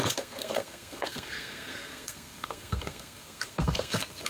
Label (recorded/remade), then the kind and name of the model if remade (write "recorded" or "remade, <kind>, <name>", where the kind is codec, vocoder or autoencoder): remade, codec, SNAC